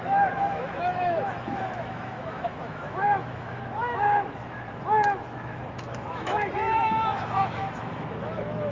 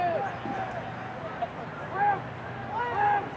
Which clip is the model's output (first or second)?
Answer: first